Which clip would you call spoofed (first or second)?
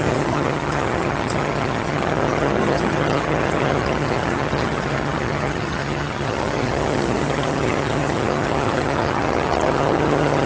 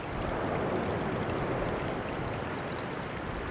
first